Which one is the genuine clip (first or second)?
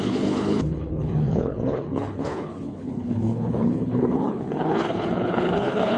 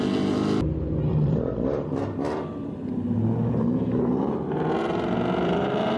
second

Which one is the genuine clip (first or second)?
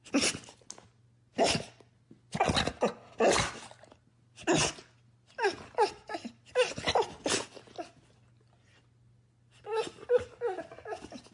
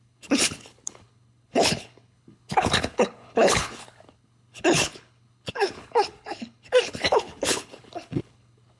first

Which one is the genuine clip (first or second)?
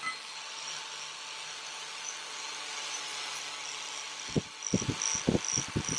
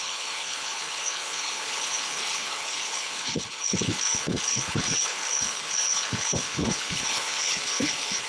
first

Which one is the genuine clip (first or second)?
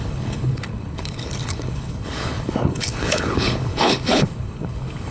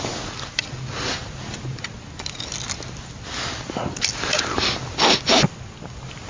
second